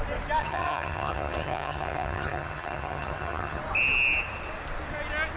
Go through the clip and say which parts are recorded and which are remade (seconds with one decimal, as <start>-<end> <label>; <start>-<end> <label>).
0.0-0.4 recorded; 0.4-3.6 remade; 3.6-5.4 recorded